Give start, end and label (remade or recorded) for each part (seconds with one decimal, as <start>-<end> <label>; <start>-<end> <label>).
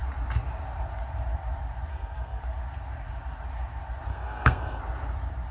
0.0-1.9 recorded; 1.9-2.4 remade; 2.4-4.1 recorded; 4.1-4.8 remade; 4.8-5.5 recorded